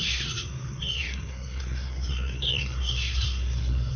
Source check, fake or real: fake